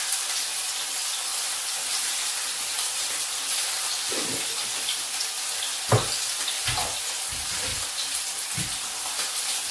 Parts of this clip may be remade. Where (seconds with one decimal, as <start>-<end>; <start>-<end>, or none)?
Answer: 1.3-4.1; 7.7-8.5